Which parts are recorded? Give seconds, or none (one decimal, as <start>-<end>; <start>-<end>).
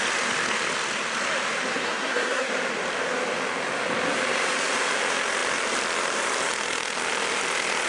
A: 0.0-1.7; 2.5-7.9